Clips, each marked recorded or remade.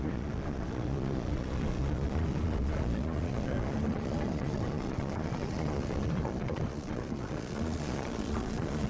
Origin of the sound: remade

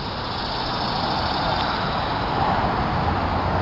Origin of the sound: recorded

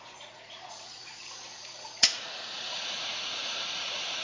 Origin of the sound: remade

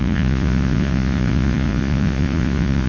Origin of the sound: remade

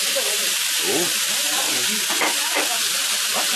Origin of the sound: recorded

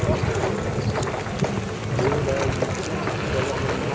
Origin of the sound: recorded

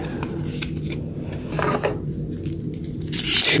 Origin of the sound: recorded